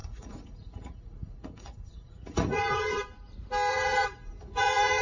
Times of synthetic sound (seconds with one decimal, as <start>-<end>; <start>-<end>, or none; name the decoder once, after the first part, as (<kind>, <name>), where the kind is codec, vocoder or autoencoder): 0.0-3.0 (vocoder, Vocos); 3.7-5.0